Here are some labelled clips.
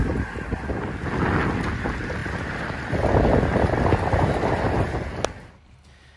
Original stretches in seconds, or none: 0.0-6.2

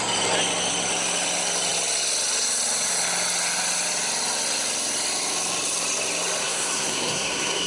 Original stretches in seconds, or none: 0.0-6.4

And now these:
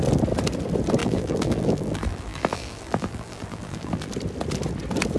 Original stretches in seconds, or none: 0.0-1.0; 4.1-5.2

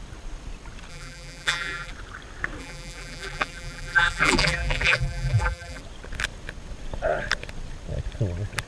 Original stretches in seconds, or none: 0.0-0.9; 1.9-2.6; 5.8-8.7

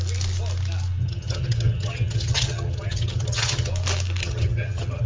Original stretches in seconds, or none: 0.0-1.0; 3.7-4.2

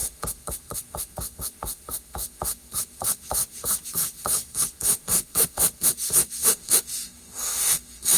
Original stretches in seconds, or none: none

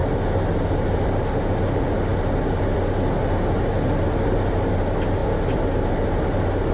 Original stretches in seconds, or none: 0.0-6.7